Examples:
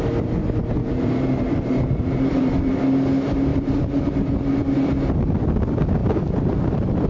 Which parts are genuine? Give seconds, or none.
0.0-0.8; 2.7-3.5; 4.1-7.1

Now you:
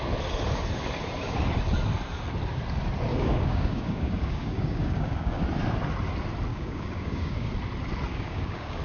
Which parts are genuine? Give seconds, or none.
0.0-3.1; 5.4-6.5; 7.5-8.1

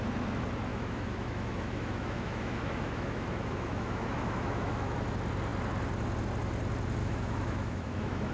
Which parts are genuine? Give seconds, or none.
0.0-0.7; 5.0-7.0